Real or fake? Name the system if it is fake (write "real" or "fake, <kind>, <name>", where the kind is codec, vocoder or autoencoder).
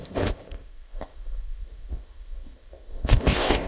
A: fake, codec, ZipCodec